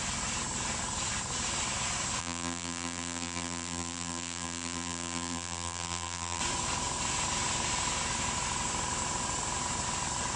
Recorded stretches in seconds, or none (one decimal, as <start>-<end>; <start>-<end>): 0.0-2.2; 6.4-10.4